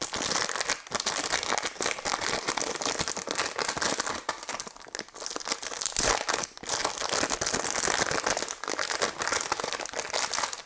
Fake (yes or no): no